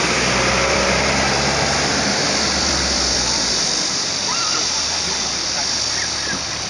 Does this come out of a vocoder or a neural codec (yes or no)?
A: yes